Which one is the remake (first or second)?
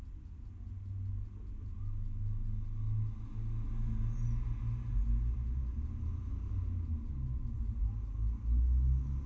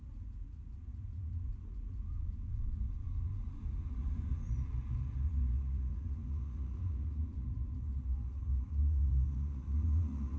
second